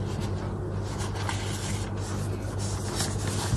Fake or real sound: real